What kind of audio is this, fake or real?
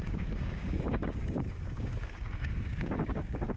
fake